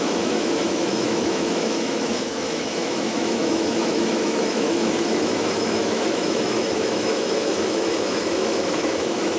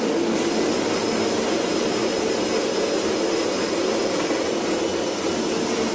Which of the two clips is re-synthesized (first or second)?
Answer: first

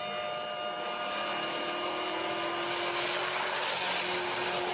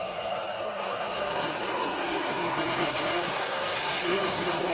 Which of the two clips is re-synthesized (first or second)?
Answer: second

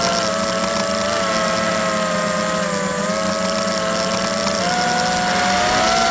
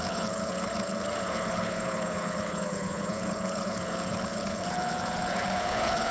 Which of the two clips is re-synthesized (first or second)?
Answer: second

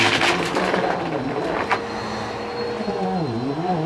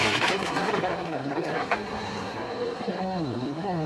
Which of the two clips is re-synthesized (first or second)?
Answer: second